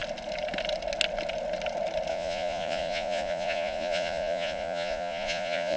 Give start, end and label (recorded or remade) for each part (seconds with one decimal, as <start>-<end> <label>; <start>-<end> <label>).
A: 0.0-2.1 recorded; 2.1-5.8 remade